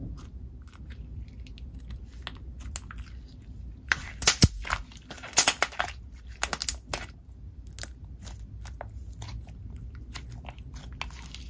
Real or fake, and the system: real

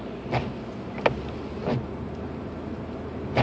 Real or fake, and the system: real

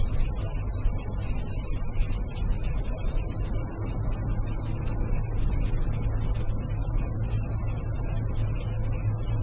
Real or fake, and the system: real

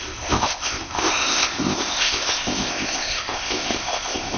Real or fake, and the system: fake, codec, ZipCodec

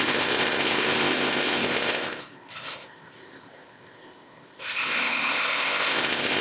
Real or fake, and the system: fake, codec, ZipCodec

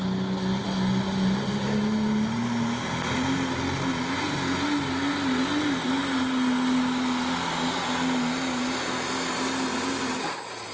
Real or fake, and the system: real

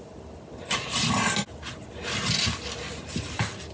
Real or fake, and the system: real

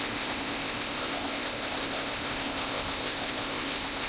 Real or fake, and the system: fake, codec, ZipCodec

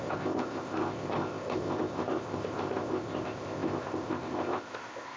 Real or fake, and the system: fake, codec, ZipCodec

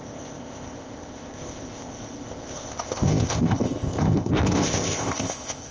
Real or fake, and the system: fake, codec, ZipCodec